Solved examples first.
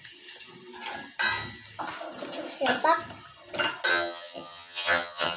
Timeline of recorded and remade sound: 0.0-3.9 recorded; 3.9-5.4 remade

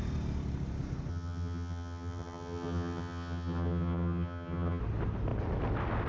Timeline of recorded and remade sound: 0.0-1.1 recorded; 1.1-4.8 remade; 4.8-6.1 recorded

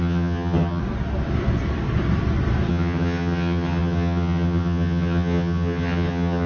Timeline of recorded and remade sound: 0.0-0.8 remade; 0.8-2.7 recorded; 2.7-6.5 remade

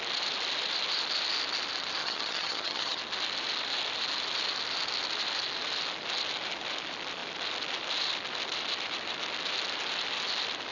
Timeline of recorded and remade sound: 0.0-2.0 recorded; 2.0-3.0 remade; 3.0-10.7 recorded

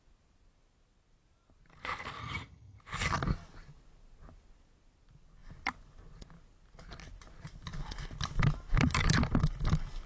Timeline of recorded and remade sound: 0.0-2.2 recorded; 2.2-2.8 remade; 2.8-10.1 recorded